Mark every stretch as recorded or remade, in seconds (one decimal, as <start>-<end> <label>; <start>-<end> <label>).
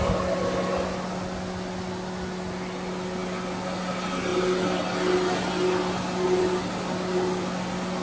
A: 0.0-8.0 recorded